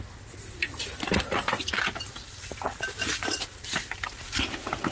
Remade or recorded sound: recorded